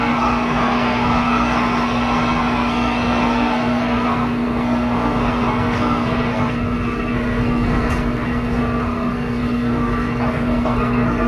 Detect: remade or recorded remade